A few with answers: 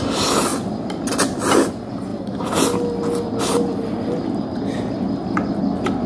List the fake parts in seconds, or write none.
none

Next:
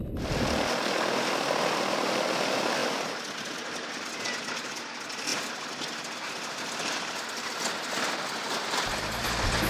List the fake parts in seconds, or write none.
none

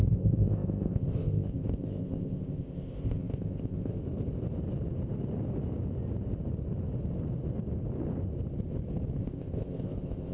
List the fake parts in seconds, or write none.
0.0-4.0 (codec, ZipCodec); 9.2-10.3

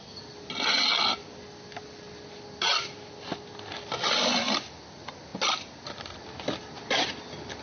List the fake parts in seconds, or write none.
none

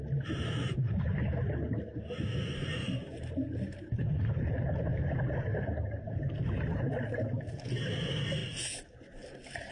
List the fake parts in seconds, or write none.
none

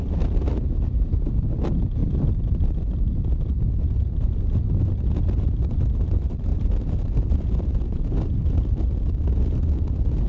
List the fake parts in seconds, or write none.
none